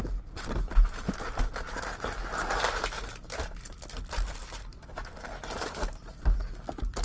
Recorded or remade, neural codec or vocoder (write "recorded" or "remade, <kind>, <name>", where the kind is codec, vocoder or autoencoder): recorded